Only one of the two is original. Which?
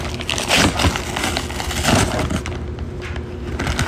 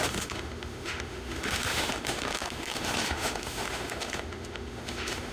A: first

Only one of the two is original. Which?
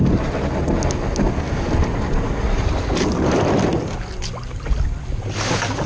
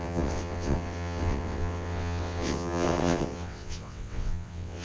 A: first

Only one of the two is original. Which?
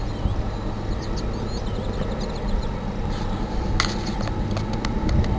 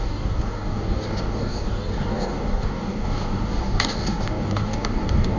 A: first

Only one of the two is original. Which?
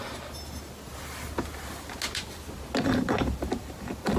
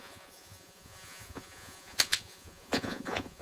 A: first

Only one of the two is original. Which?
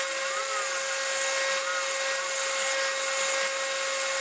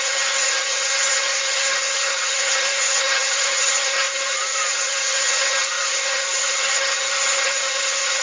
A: first